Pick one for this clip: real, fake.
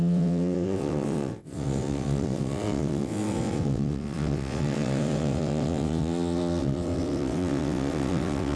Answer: fake